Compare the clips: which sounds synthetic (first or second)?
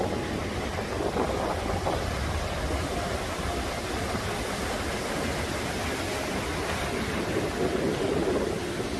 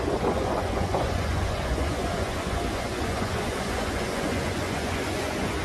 second